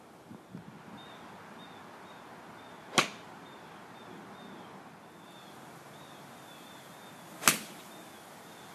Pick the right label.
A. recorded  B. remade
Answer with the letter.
A